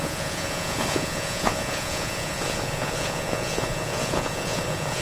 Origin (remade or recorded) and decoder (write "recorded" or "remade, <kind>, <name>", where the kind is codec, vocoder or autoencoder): remade, vocoder, Vocos